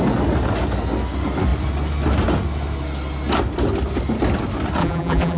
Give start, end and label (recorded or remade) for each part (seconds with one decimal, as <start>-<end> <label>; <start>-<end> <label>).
0.0-4.8 recorded; 4.8-5.4 remade